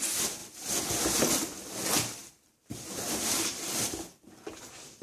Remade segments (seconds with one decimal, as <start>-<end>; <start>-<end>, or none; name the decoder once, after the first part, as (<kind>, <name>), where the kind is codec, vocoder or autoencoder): 0.4-1.2 (vocoder, BigVGAN v2); 2.2-5.0